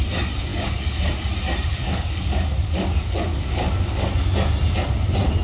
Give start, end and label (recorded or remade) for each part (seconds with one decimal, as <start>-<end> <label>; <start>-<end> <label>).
0.0-0.5 recorded; 0.5-1.1 remade; 1.1-1.7 recorded; 1.7-4.1 remade; 4.1-5.4 recorded